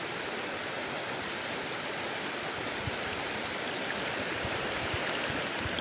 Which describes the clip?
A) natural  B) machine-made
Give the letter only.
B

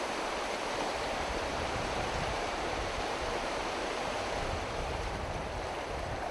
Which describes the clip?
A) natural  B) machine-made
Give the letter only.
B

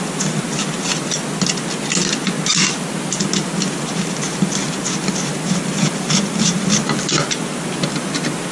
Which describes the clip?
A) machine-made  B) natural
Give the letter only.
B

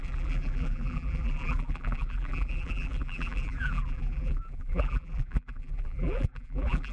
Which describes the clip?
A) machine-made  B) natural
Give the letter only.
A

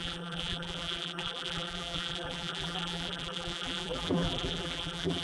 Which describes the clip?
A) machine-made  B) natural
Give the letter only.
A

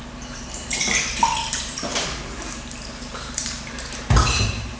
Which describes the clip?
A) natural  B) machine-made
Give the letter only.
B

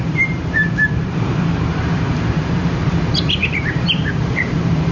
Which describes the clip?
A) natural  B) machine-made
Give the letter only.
B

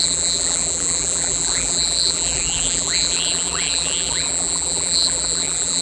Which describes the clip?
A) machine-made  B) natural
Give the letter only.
A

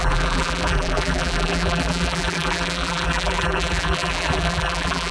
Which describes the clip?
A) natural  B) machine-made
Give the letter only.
B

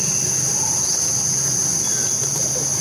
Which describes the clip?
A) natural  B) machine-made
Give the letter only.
A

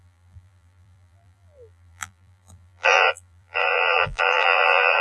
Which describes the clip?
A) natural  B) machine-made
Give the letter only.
B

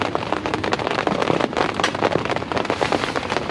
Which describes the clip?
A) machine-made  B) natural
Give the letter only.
A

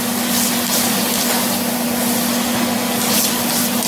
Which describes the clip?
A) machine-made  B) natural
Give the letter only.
B